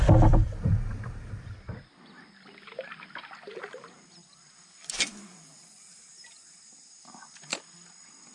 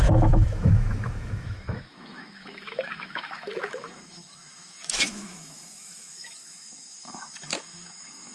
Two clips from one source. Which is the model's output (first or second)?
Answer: second